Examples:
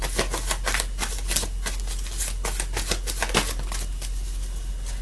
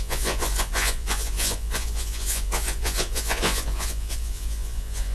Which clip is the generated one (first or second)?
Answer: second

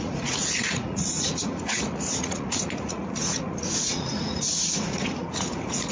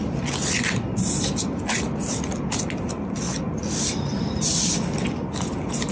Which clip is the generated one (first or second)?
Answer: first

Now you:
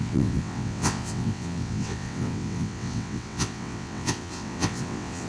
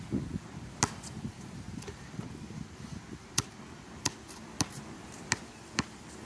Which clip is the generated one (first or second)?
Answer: first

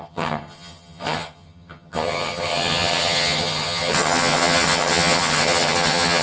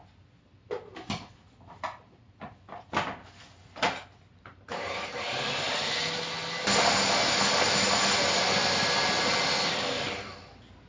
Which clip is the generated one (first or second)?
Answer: first